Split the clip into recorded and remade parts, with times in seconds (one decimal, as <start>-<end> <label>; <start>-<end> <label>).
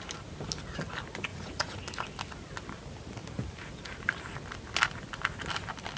0.0-1.3 recorded; 1.3-1.8 remade; 1.8-6.0 recorded